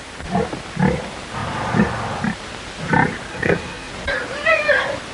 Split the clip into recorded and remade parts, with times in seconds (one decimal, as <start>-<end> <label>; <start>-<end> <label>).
0.0-3.3 recorded; 3.3-3.9 remade; 3.9-5.1 recorded